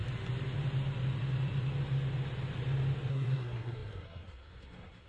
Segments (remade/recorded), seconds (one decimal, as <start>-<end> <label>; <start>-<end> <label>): 0.0-3.1 recorded; 3.1-5.1 remade